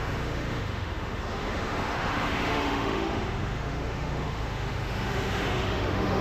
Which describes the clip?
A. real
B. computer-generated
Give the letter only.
B